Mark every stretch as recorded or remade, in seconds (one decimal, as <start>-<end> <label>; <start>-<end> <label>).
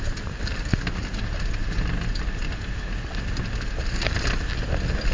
0.0-5.1 recorded